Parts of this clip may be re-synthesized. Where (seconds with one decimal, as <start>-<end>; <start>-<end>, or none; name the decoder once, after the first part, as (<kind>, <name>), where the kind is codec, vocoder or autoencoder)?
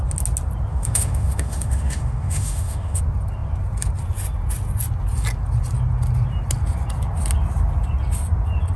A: 0.7-3.0 (autoencoder, DAC-VAE)